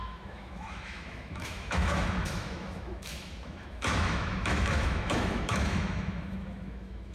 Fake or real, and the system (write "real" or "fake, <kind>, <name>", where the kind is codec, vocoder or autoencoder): fake, autoencoder, DAC-VAE